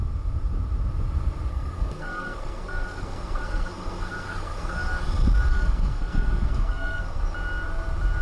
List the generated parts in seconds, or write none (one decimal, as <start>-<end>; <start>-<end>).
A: 1.5-4.8; 5.5-7.2